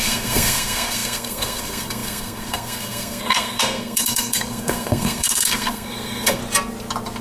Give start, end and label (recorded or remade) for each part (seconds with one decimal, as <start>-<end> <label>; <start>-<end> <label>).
0.0-6.4 remade; 6.4-7.2 recorded